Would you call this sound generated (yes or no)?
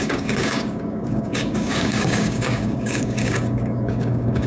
yes